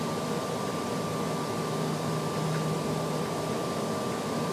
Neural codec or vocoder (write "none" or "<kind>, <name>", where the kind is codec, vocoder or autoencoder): none